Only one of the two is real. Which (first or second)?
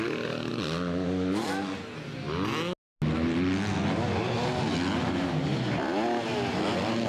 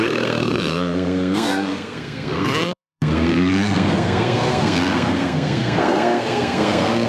first